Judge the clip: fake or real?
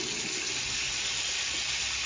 real